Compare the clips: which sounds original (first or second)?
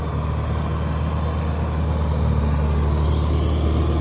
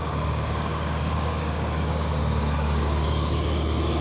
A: first